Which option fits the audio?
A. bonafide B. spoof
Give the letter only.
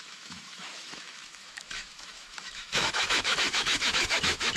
B